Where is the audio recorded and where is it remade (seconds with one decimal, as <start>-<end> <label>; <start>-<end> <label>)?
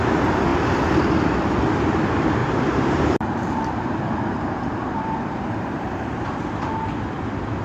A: 0.0-2.4 recorded; 2.4-6.4 remade; 6.4-7.6 recorded